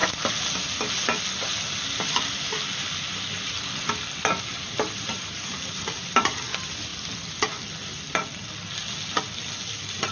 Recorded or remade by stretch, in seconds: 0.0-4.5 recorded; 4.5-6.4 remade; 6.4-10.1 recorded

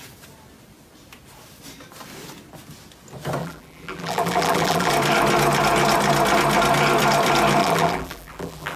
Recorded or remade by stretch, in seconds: 0.0-3.4 recorded; 3.4-4.9 remade; 4.9-7.6 recorded; 7.6-8.8 remade

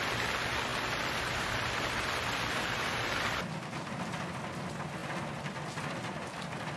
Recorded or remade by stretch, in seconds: 0.0-0.7 recorded; 0.7-4.4 remade; 4.4-5.0 recorded; 5.0-5.5 remade; 5.5-6.8 recorded

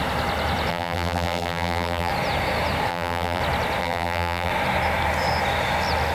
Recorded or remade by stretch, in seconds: 0.0-0.7 recorded; 0.7-2.1 remade; 2.1-2.9 recorded; 2.9-3.4 remade; 3.4-3.8 recorded; 3.8-4.5 remade; 4.5-6.1 recorded

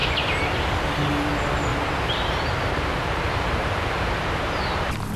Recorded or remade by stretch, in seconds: 0.0-1.1 remade; 1.1-1.7 recorded; 1.7-4.8 remade; 4.8-5.2 recorded

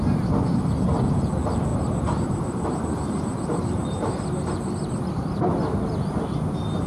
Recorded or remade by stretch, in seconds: 0.0-1.7 recorded; 1.7-5.1 remade; 5.1-6.9 recorded